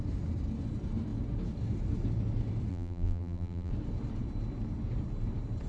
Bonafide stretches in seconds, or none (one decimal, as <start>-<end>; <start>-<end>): 0.0-2.7; 3.7-5.7